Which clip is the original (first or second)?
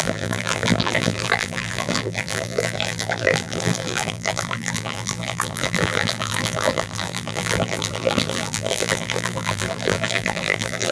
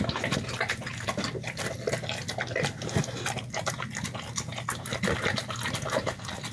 second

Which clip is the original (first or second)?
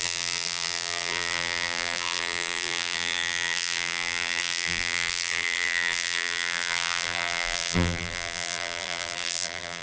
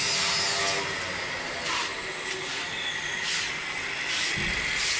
second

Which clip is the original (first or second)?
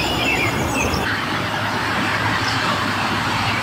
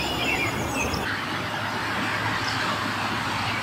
second